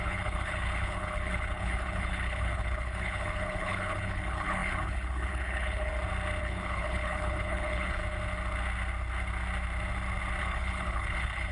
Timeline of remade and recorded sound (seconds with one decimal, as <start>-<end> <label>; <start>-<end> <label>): 0.0-5.9 remade; 5.9-6.4 recorded; 6.4-8.0 remade; 8.0-10.4 recorded; 10.4-11.5 remade